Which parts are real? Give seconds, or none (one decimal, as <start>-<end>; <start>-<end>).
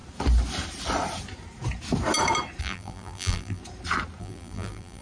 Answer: 0.0-2.6; 3.6-4.2